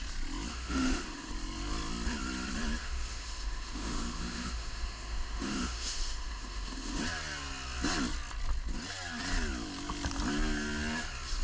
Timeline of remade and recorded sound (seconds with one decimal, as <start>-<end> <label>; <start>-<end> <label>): 0.0-0.5 recorded; 0.5-1.3 remade; 1.3-2.8 recorded; 2.8-7.0 remade; 7.0-11.4 recorded

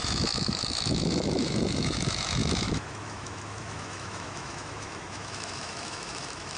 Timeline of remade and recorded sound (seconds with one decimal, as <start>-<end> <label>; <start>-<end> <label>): 0.0-6.6 remade

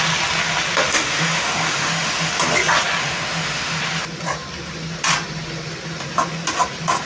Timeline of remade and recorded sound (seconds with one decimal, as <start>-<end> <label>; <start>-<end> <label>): 0.0-0.9 recorded; 0.9-2.3 remade; 2.3-3.0 recorded; 3.0-3.8 remade; 3.8-7.1 recorded

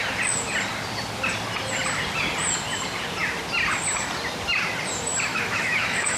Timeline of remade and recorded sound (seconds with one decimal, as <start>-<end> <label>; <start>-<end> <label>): 0.0-5.3 recorded; 5.3-6.2 remade

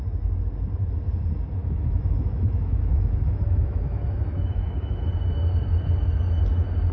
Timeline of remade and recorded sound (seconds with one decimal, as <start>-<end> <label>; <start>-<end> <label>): 0.0-1.6 recorded; 1.6-5.1 remade; 5.1-6.9 recorded

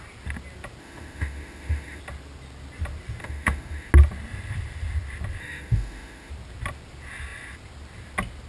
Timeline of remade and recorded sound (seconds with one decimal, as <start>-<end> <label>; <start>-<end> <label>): 0.0-0.8 recorded; 0.8-2.0 remade; 2.0-3.2 recorded; 3.2-3.9 remade; 3.9-5.4 recorded; 5.4-6.3 remade; 6.3-8.5 recorded

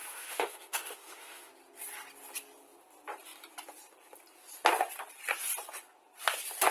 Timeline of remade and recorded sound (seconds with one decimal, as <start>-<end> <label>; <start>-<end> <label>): 0.0-1.5 remade; 1.5-6.7 recorded

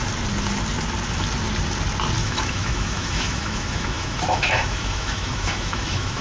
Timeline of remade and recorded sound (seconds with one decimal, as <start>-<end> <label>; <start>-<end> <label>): 0.0-2.2 recorded; 2.2-6.2 remade